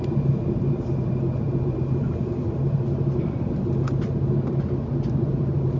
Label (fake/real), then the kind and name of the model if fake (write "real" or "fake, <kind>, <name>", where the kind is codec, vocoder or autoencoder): real